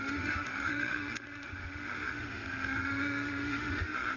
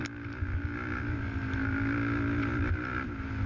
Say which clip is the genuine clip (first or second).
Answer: second